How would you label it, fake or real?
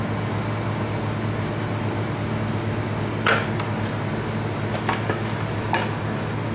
real